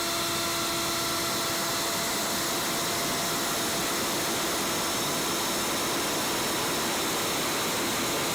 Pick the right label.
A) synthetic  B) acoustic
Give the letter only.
B